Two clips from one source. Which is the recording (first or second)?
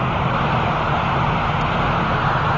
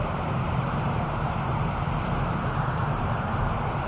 first